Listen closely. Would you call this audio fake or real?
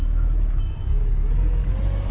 real